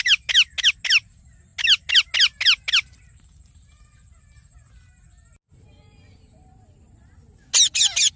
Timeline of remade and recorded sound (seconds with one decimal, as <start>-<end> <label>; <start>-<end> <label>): 0.0-8.2 recorded